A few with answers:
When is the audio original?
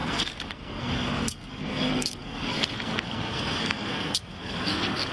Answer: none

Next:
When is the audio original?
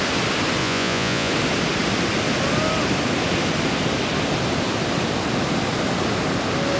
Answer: 0.0-0.6; 1.3-6.8